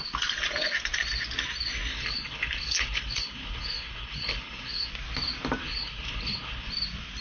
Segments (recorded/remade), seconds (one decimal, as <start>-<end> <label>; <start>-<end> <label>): 0.0-1.9 recorded; 1.9-4.9 remade; 4.9-5.6 recorded; 5.6-6.7 remade; 6.7-7.2 recorded